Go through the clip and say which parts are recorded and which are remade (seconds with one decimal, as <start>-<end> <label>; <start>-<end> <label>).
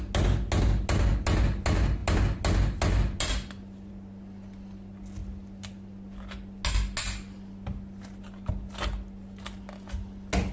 0.0-10.5 recorded